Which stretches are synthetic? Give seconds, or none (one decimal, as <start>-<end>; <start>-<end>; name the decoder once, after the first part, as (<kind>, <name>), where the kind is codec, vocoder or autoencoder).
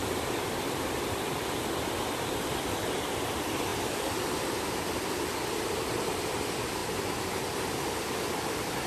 none